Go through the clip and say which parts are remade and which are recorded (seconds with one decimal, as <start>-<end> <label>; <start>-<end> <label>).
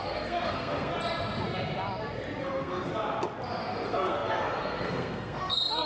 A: 0.0-0.9 remade; 0.9-2.4 recorded; 2.4-2.9 remade; 2.9-3.6 recorded; 3.6-5.9 remade